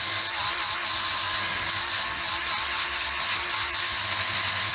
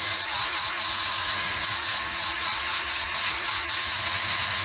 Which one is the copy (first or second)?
second